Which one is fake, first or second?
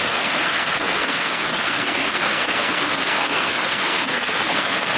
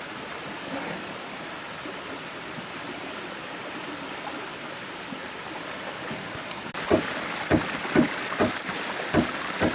first